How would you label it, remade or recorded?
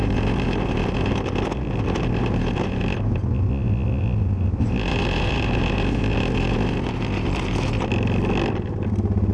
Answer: recorded